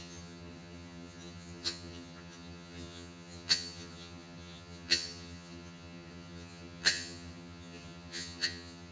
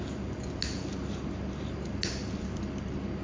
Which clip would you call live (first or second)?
second